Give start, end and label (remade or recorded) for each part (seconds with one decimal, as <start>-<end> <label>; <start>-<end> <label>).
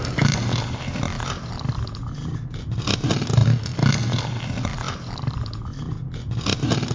0.0-6.9 recorded